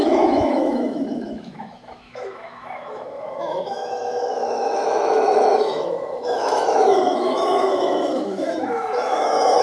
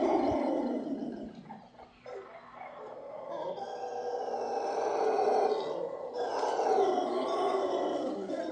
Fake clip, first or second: first